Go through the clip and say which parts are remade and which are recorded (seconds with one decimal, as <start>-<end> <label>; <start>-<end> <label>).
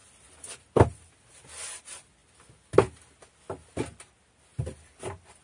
0.0-5.4 recorded